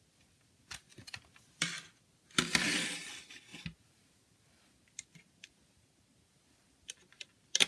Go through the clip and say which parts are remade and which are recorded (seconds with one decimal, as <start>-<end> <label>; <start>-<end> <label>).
0.0-7.7 recorded